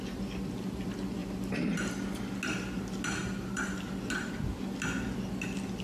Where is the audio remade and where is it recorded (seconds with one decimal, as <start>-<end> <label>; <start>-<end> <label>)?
0.0-5.8 recorded